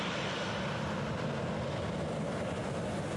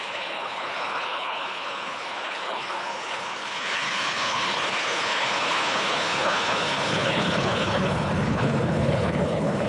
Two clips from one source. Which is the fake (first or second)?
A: second